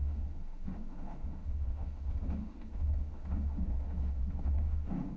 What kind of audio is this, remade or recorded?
remade